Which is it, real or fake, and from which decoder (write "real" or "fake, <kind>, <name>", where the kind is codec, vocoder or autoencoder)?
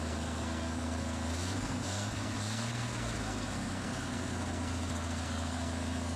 fake, codec, SNAC